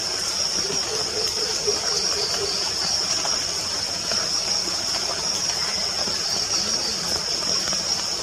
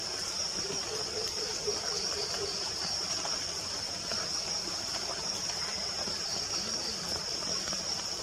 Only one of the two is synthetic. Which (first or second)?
second